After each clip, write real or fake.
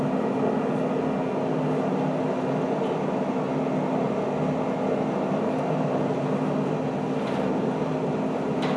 real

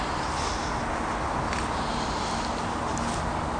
real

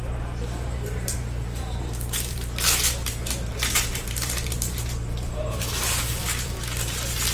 fake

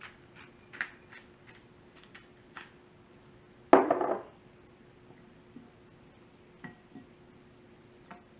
real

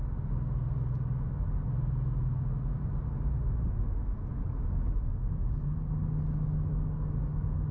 real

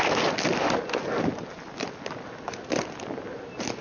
real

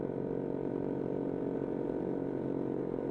fake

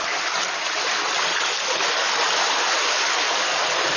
fake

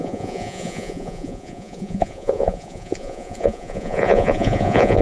fake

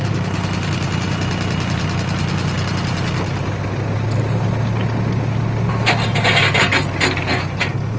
real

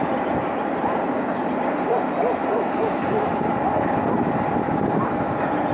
real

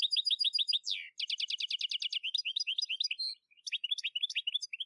real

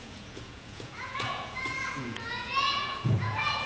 fake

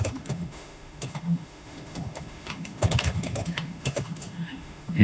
fake